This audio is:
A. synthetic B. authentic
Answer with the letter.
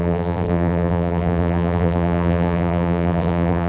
A